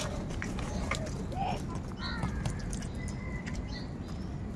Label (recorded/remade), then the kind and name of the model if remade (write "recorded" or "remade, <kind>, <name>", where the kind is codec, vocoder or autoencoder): recorded